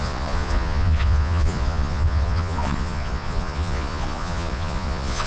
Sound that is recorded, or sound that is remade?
remade